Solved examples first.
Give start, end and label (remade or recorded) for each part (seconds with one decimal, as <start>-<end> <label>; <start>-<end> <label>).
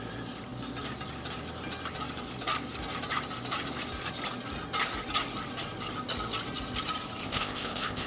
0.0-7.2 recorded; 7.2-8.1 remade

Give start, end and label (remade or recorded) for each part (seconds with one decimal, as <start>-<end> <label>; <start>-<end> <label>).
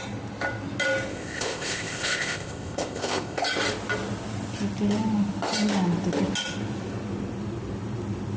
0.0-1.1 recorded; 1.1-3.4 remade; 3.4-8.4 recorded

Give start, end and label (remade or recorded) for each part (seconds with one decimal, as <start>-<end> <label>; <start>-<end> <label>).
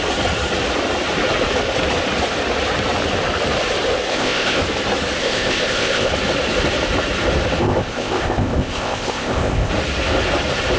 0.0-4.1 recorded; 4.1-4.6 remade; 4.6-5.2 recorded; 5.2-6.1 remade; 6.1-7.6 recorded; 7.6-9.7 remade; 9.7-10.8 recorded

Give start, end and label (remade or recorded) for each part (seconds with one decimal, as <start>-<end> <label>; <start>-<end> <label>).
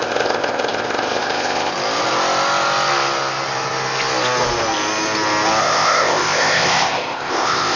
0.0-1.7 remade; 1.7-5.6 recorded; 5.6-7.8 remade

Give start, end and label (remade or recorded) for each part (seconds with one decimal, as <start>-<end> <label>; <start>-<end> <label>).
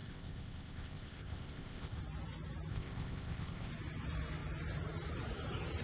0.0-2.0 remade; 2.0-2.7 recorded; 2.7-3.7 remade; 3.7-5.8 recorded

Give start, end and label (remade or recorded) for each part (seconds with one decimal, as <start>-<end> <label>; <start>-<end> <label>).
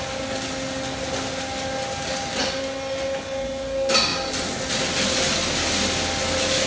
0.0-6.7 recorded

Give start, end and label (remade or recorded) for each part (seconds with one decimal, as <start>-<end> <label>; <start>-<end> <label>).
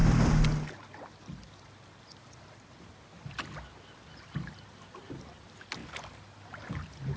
0.0-7.2 recorded